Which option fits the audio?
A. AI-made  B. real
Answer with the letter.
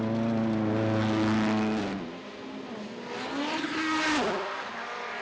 B